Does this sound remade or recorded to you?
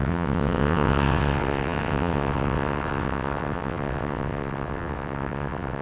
remade